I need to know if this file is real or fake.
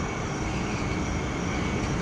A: real